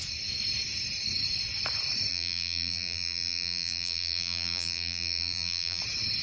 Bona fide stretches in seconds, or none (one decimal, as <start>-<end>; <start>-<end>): 0.0-2.1; 5.8-6.2